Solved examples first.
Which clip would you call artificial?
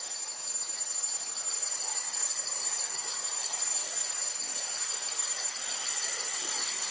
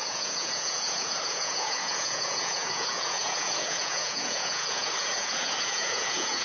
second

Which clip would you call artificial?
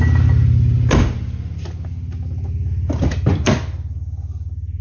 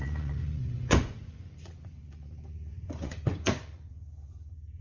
second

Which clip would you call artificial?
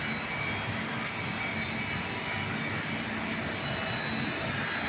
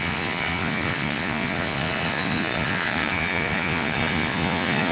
second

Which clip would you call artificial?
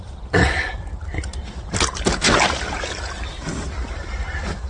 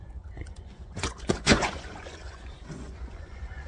second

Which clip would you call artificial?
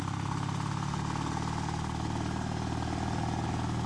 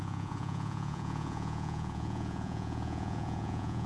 second